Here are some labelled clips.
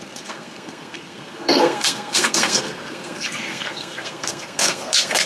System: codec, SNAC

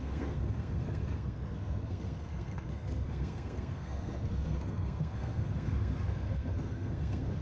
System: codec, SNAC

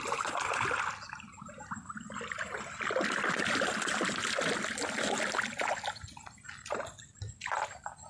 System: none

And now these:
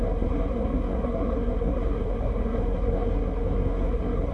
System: codec, SNAC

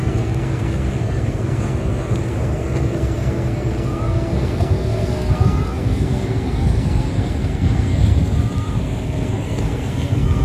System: codec, SNAC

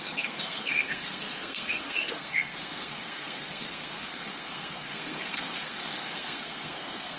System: codec, SNAC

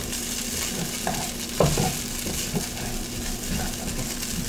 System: none